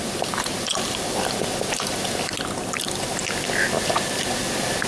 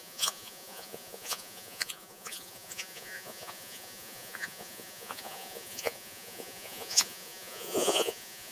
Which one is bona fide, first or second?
first